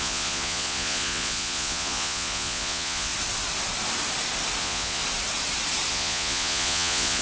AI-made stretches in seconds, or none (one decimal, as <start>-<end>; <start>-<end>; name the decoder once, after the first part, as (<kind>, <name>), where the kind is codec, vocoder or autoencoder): 0.0-3.1 (vocoder, Vocos); 4.6-5.0; 5.9-7.2